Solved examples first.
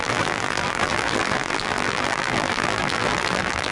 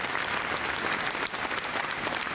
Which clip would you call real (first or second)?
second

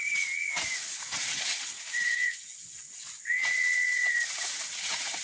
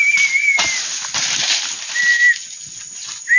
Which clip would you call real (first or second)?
second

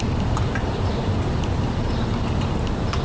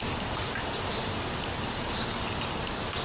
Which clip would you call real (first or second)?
second